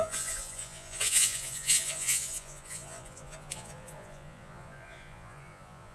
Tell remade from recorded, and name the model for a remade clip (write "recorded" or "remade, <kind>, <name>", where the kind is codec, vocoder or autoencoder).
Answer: remade, vocoder, Vocos